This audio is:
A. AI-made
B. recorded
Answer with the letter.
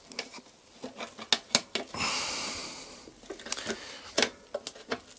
B